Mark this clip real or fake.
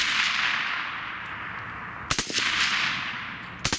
real